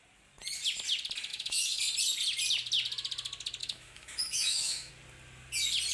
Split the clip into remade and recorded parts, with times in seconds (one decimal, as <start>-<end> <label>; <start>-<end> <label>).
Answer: 0.0-1.3 recorded; 1.3-1.8 remade; 1.8-3.6 recorded; 3.6-4.9 remade; 4.9-5.9 recorded